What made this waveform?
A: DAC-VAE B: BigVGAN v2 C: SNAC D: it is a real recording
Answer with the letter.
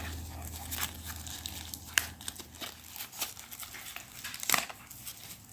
D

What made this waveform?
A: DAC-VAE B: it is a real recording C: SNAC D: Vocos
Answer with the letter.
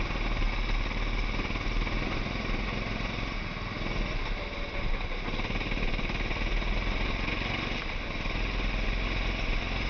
B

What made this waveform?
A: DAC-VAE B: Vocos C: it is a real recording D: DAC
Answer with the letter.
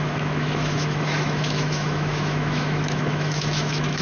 A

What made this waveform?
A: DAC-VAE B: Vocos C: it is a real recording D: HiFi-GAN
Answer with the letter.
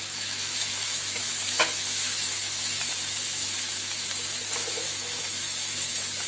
A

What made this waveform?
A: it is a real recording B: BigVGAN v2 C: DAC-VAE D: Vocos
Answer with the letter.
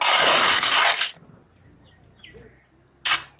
A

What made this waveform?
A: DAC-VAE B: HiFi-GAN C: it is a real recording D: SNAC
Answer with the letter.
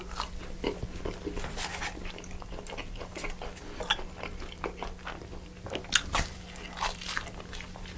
C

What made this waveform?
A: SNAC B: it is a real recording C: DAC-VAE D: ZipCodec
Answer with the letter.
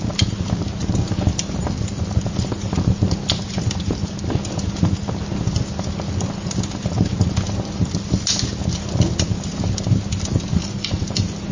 B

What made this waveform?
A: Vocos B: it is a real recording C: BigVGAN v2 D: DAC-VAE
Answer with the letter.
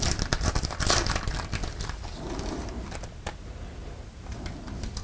B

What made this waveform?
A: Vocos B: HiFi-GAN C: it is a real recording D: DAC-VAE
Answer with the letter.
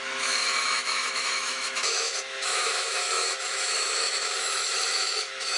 D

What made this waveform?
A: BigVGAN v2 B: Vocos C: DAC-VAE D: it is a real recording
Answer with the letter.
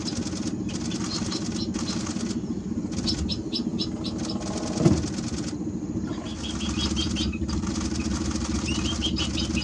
D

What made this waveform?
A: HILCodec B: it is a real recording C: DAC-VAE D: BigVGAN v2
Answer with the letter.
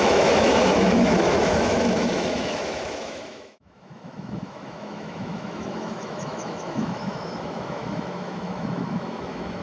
C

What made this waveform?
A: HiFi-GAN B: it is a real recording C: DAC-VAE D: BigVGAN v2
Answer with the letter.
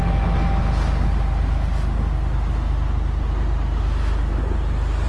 B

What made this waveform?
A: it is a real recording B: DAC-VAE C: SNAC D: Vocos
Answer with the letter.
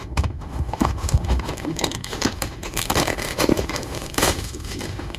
B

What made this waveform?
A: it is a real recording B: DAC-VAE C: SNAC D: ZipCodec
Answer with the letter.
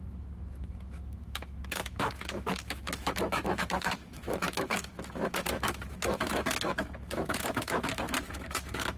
B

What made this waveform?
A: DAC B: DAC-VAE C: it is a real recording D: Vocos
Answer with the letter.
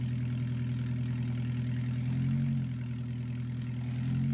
C